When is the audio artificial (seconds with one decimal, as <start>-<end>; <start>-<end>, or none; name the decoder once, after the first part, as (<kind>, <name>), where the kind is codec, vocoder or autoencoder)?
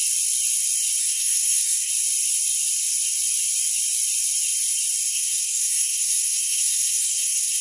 1.0-1.9 (codec, SNAC); 5.1-7.6